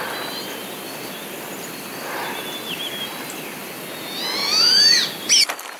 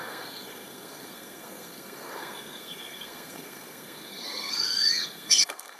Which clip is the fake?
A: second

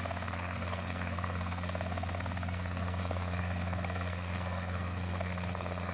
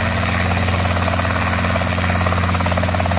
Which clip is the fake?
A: first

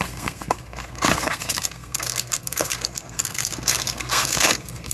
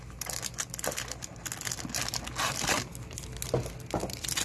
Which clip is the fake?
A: first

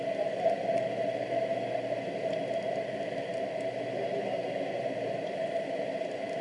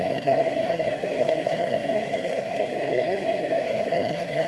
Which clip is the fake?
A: second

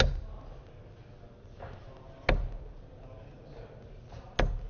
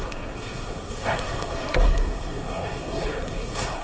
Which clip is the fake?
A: second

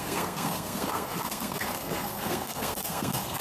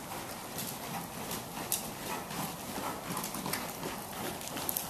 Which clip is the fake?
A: first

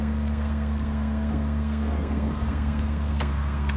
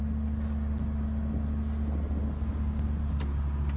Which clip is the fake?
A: first